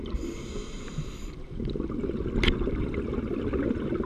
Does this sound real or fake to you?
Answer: real